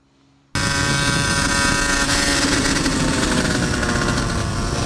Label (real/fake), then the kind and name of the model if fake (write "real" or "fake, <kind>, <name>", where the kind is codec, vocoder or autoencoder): real